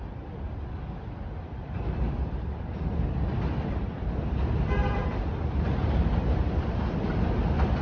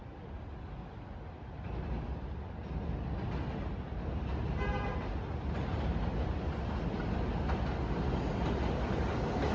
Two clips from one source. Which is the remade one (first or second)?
first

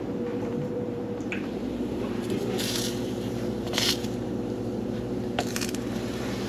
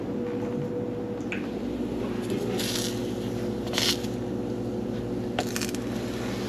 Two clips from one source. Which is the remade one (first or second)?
first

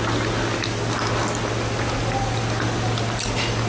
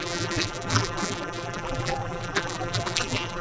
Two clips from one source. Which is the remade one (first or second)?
second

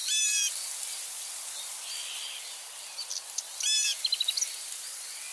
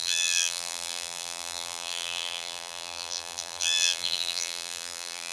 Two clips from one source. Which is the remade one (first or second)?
second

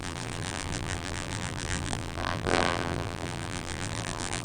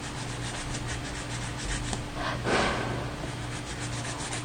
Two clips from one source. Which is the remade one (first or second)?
first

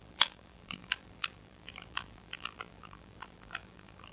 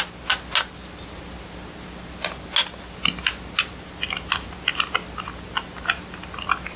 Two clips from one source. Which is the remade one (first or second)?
first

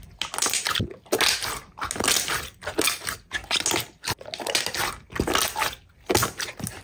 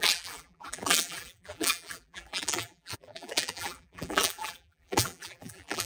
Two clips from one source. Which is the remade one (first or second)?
second